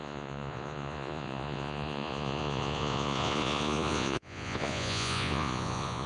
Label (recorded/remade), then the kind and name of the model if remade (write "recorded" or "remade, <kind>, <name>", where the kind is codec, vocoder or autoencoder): remade, vocoder, Vocos